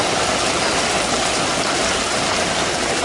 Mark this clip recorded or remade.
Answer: recorded